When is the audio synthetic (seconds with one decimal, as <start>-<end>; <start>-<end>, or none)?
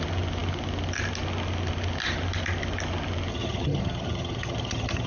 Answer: 3.3-5.1